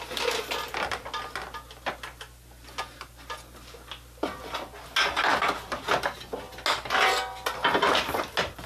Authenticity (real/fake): real